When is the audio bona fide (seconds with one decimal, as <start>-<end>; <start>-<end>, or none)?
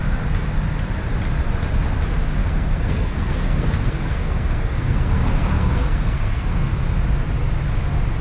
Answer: 0.0-2.4; 6.8-8.2